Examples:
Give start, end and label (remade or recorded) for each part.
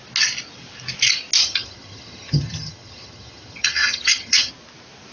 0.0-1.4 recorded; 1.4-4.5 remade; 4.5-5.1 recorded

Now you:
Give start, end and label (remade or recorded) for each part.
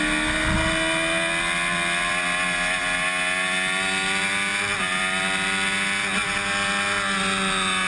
0.0-7.9 recorded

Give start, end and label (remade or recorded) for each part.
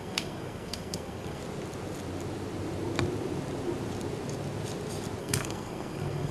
0.0-1.4 remade; 1.4-5.2 recorded; 5.2-6.3 remade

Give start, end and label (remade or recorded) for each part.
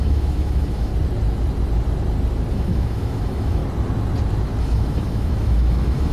0.0-0.9 remade; 0.9-2.5 recorded; 2.5-3.6 remade; 3.6-4.6 recorded; 4.6-6.1 remade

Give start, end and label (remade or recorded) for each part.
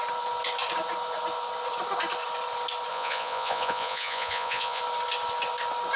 0.0-2.9 recorded; 2.9-4.8 remade; 4.8-6.0 recorded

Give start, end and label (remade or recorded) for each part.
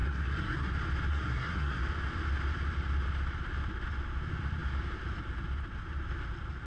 0.0-0.7 remade; 0.7-1.1 recorded; 1.1-1.8 remade; 1.8-6.7 recorded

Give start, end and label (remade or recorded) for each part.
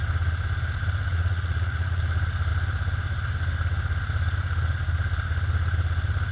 0.0-1.1 recorded; 1.1-2.0 remade; 2.0-6.3 recorded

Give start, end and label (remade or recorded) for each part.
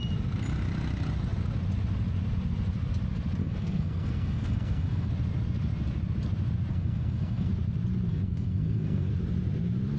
0.0-3.4 recorded; 3.4-5.1 remade; 5.1-6.7 recorded; 6.7-7.5 remade; 7.5-8.1 recorded; 8.1-9.1 remade; 9.1-10.0 recorded